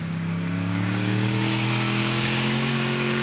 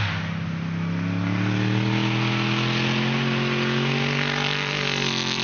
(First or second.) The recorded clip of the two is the second